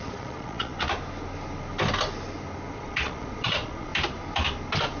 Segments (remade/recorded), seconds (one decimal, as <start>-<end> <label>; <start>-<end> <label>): 0.0-0.7 remade; 0.7-2.7 recorded; 2.7-3.9 remade; 3.9-5.0 recorded